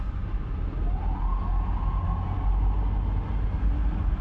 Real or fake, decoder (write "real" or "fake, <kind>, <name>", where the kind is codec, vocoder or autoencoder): real